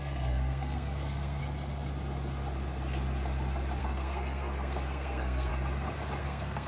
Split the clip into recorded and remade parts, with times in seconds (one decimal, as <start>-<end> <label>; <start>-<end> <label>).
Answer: 0.0-1.4 remade; 1.4-3.8 recorded; 3.8-5.5 remade; 5.5-6.2 recorded; 6.2-6.7 remade